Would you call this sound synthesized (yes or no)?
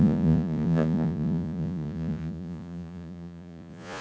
yes